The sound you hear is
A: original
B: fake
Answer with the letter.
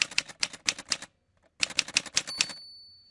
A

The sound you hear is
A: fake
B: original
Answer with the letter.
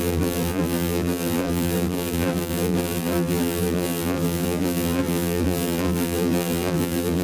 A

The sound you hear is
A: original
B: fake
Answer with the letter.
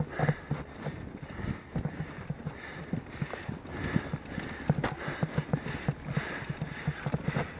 A